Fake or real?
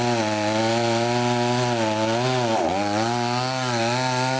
real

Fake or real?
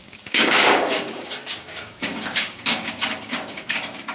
fake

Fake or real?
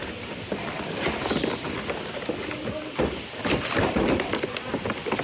real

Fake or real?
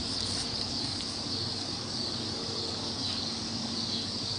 fake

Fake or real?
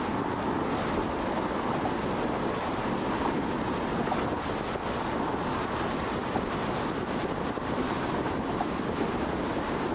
real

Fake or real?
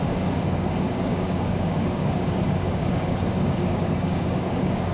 fake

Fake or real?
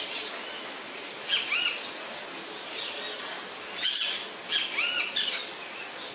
real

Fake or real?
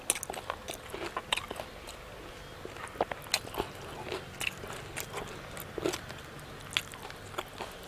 real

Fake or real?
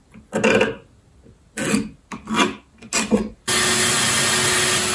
real